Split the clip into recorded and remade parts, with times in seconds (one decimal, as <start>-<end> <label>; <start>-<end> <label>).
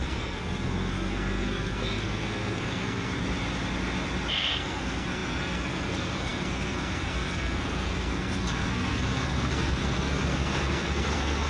0.0-3.1 remade; 3.1-4.3 recorded; 4.3-11.5 remade